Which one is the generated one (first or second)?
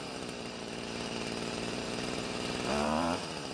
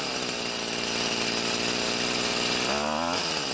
first